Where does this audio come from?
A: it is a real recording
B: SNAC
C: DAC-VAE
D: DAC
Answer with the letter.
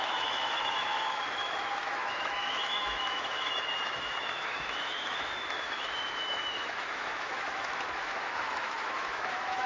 C